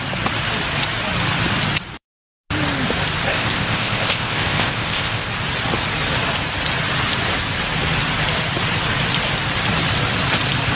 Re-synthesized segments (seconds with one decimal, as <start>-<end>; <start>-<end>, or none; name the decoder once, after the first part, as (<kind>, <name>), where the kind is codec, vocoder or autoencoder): 3.3-5.3 (codec, ZipCodec)